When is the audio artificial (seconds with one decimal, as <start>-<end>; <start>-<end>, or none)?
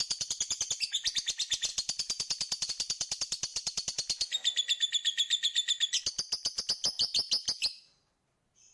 none